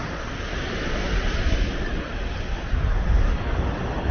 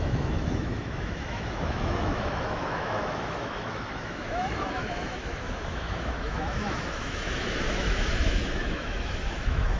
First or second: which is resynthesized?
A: second